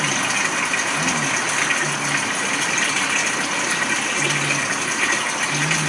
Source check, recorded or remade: recorded